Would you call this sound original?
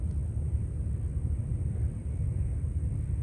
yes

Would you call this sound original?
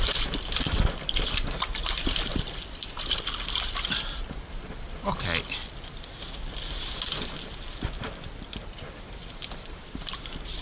yes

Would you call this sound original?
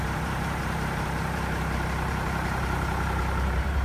no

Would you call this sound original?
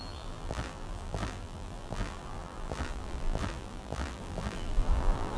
no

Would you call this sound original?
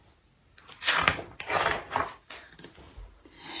yes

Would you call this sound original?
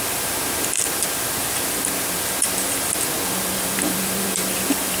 no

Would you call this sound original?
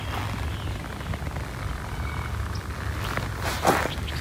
yes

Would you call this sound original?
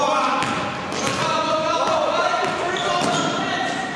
yes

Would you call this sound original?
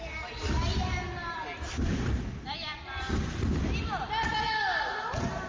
yes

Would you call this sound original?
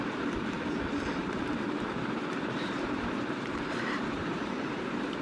no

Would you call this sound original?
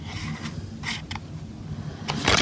yes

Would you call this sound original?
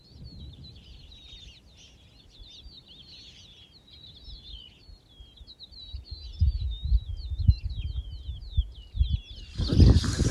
yes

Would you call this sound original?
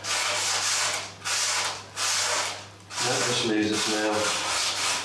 yes